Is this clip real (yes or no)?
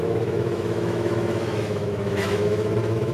no